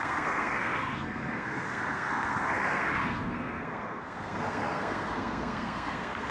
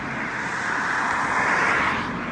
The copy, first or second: first